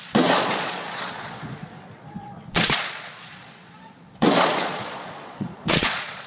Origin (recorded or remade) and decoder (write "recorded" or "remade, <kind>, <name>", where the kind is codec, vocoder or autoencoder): remade, vocoder, Vocos